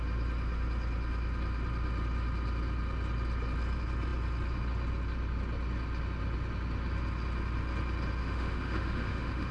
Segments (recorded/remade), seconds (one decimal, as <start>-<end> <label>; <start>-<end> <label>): 0.0-8.2 recorded; 8.2-9.5 remade